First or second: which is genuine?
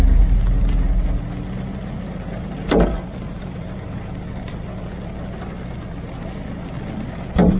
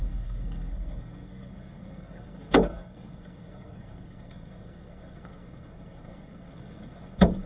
first